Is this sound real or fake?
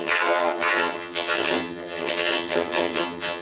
fake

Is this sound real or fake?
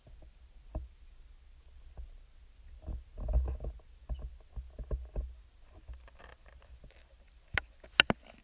real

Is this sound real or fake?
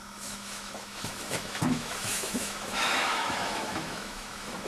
fake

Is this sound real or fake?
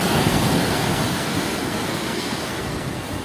fake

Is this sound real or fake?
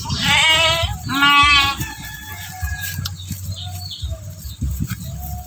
real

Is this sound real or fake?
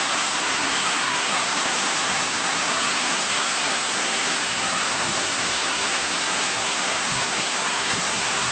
fake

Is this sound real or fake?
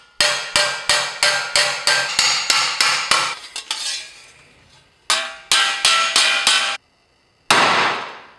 real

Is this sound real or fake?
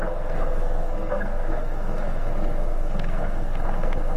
fake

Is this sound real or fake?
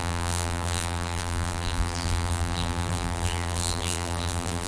fake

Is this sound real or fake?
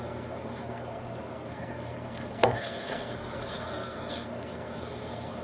fake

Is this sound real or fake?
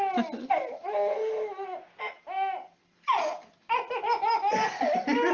real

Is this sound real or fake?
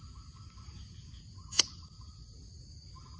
real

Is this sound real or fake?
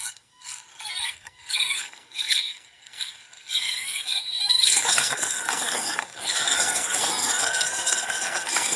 fake